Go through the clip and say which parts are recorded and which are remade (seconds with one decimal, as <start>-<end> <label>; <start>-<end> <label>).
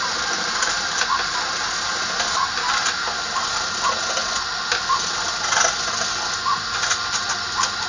0.0-7.9 recorded